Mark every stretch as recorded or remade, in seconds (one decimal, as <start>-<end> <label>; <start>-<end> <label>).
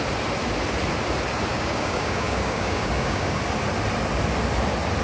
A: 0.0-1.5 recorded; 1.5-3.4 remade; 3.4-5.0 recorded